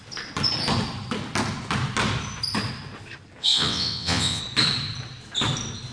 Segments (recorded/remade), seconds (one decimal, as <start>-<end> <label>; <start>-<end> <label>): 0.0-3.4 recorded; 3.4-4.4 remade; 4.4-5.9 recorded